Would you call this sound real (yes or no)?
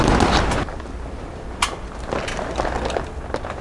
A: yes